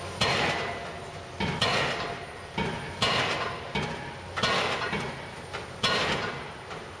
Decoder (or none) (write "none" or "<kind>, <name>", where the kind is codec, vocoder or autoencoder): none